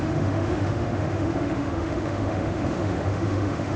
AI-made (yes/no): yes